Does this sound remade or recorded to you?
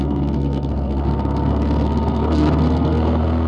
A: remade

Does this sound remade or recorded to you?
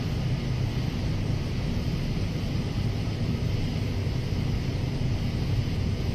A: recorded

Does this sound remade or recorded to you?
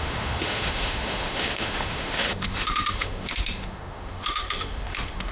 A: remade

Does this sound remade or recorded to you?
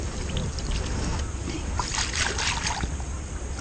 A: recorded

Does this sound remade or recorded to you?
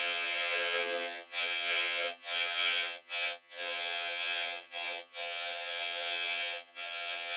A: remade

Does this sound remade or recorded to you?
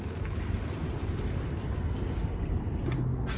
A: recorded